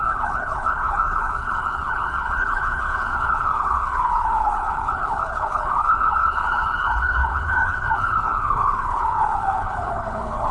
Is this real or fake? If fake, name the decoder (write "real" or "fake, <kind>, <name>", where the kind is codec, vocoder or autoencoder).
fake, codec, HILCodec